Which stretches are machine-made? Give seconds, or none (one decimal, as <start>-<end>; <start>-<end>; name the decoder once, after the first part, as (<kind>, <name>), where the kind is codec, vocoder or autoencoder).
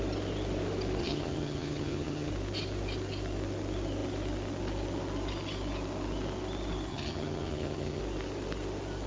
1.0-2.3 (vocoder, HiFi-GAN); 6.9-8.0